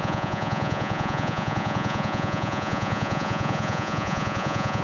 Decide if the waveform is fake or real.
fake